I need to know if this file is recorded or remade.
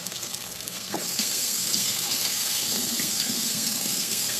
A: remade